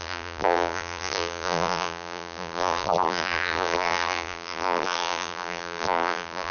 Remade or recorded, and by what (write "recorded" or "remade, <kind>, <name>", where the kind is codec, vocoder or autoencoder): remade, vocoder, BigVGAN v2